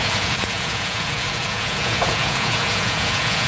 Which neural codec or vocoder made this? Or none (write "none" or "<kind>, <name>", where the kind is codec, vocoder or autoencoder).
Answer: vocoder, Vocos